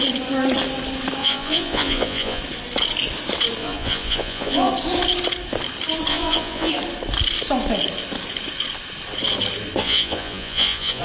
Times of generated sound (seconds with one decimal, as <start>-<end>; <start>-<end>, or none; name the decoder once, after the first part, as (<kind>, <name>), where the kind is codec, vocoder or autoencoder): 1.2-2.4 (vocoder, Vocos); 3.6-4.7; 6.1-6.7; 9.8-11.0